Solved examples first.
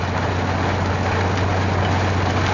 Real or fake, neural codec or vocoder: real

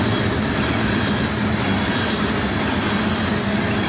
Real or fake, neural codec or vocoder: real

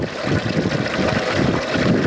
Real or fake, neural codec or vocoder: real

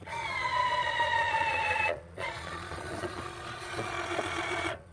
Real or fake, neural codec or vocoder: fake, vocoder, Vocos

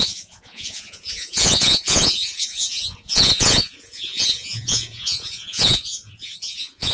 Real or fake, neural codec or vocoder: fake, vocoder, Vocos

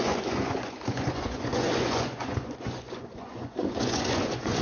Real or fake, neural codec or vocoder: fake, vocoder, Vocos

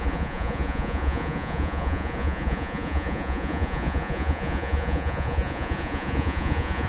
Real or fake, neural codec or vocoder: fake, vocoder, Vocos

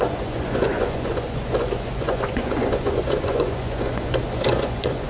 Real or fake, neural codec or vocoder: fake, vocoder, Vocos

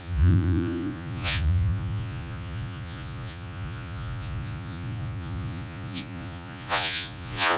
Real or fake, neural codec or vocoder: fake, vocoder, Vocos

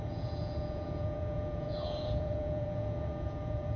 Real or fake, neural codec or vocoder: fake, vocoder, Vocos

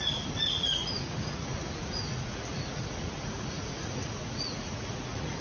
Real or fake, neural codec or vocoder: fake, vocoder, Vocos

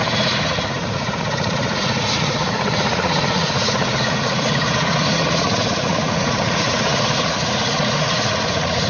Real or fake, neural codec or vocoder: fake, vocoder, Vocos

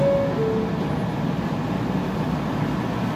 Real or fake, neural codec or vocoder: real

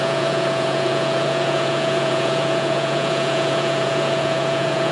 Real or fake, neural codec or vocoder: fake, vocoder, Vocos